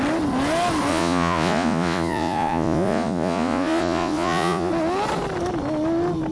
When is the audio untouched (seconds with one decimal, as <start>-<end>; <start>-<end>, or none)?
0.0-0.9; 4.7-6.3